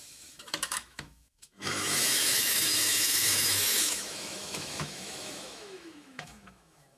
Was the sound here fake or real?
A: fake